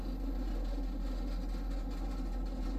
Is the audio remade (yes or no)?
no